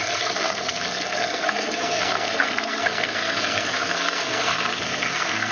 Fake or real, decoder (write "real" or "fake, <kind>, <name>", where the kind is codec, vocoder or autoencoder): fake, codec, SNAC